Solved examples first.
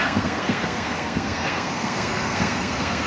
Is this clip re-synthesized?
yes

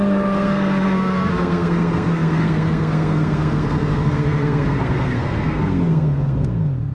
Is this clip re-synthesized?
yes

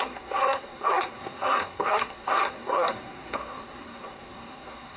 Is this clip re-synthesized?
yes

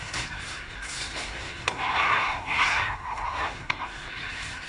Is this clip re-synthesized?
yes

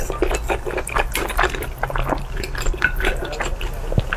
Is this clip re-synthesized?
no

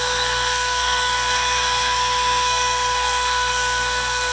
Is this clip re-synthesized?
yes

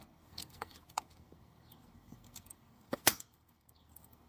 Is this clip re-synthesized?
yes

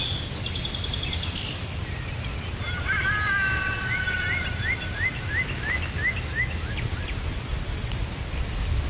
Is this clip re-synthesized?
no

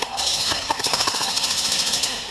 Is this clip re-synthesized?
yes